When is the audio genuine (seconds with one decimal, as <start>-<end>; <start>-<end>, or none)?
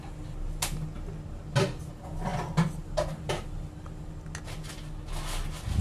0.0-5.8